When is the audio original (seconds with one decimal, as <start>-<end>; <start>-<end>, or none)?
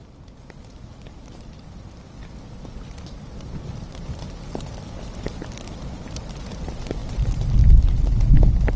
0.0-8.8